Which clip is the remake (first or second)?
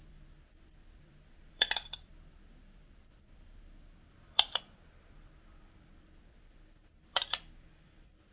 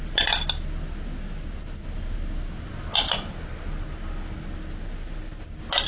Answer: first